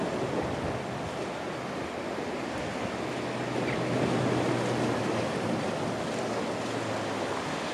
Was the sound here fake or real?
real